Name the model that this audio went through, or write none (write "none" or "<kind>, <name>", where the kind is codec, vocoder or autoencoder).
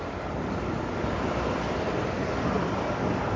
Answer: none